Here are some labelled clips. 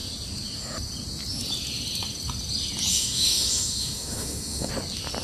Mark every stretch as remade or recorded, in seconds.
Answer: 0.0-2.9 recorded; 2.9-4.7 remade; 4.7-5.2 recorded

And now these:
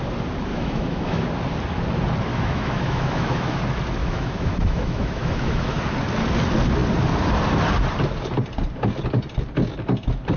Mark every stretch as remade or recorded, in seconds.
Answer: 0.0-0.5 recorded; 0.5-1.2 remade; 1.2-2.3 recorded; 2.3-3.6 remade; 3.6-4.0 recorded; 4.0-5.8 remade; 5.8-10.4 recorded

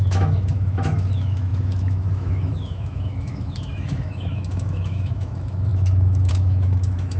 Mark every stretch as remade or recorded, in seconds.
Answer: 0.0-7.2 remade

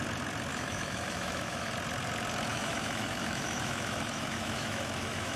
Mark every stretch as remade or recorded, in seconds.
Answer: 0.0-0.5 recorded; 0.5-1.7 remade; 1.7-2.5 recorded; 2.5-5.4 remade